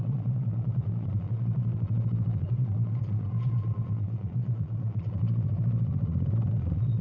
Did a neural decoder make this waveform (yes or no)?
yes